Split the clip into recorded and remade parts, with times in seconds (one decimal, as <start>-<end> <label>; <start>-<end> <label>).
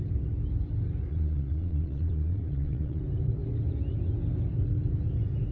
0.0-1.1 recorded; 1.1-3.0 remade; 3.0-5.5 recorded